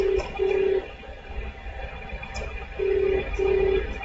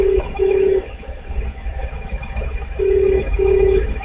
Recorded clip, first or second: first